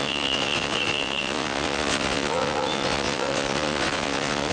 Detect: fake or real fake